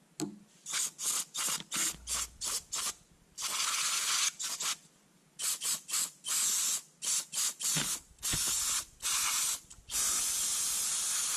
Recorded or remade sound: recorded